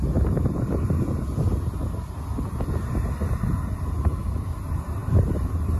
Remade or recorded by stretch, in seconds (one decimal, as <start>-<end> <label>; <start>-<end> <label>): 0.0-5.8 recorded

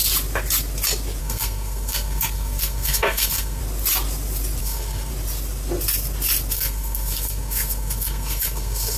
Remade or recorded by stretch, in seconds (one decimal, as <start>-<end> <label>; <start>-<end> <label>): 0.0-1.2 recorded; 1.2-3.6 remade; 3.6-4.6 recorded; 4.6-5.1 remade; 5.1-6.5 recorded; 6.5-9.0 remade

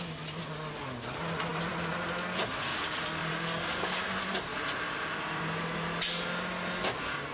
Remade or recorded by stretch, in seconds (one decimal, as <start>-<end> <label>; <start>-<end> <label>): 0.0-3.2 recorded; 3.2-3.9 remade; 3.9-4.5 recorded; 4.5-5.2 remade; 5.2-7.3 recorded

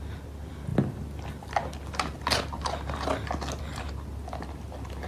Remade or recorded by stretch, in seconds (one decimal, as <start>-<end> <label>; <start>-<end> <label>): 0.0-5.1 recorded

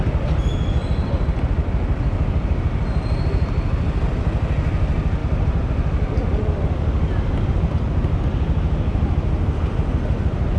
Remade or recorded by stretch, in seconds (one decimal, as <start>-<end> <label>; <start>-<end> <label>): 0.0-10.6 recorded

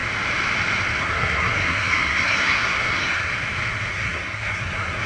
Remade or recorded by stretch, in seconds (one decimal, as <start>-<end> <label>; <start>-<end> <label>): 0.0-1.0 recorded; 1.0-3.3 remade; 3.3-3.9 recorded; 3.9-5.1 remade

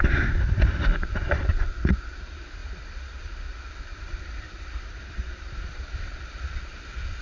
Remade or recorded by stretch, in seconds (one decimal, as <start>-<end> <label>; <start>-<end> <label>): 0.0-2.6 remade; 2.6-3.7 recorded; 3.7-7.2 remade

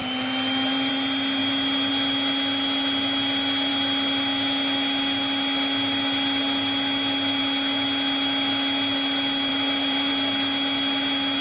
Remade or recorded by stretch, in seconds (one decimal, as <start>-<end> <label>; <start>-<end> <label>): 0.0-0.9 remade; 0.9-9.5 recorded; 9.5-10.1 remade; 10.1-11.4 recorded